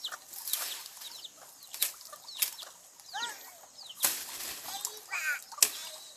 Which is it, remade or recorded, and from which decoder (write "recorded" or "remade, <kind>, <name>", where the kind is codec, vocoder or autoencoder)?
recorded